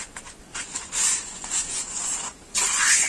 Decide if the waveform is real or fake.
fake